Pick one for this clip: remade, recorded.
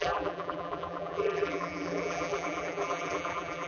remade